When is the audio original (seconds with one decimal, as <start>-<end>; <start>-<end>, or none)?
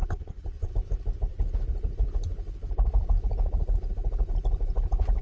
0.7-5.2